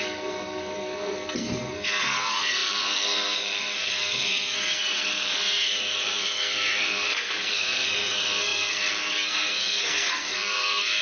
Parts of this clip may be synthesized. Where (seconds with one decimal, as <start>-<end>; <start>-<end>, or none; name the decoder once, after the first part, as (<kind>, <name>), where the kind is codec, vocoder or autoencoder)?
0.0-11.0 (codec, SNAC)